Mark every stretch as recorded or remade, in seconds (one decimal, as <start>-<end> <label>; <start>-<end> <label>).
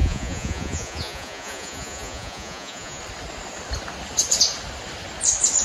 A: 0.0-3.0 remade; 3.0-5.6 recorded